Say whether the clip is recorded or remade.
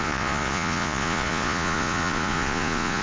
remade